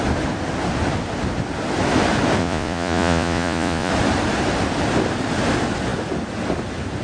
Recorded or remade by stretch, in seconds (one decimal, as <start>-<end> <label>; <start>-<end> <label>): 0.0-2.4 recorded; 2.4-3.9 remade; 3.9-7.0 recorded